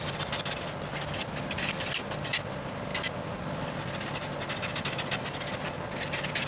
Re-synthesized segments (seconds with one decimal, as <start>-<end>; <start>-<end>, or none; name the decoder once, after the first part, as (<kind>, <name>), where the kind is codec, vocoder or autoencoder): none